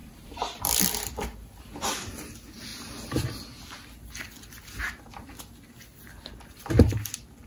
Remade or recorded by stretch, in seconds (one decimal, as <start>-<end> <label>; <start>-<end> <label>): 0.0-1.6 remade; 1.6-7.5 recorded